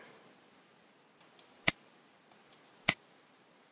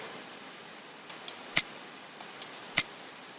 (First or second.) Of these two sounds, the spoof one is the second